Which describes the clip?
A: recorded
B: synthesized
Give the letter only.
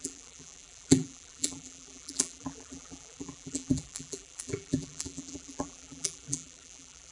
B